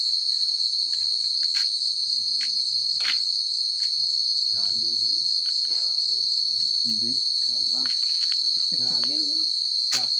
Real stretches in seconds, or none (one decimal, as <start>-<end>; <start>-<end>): 2.0-2.6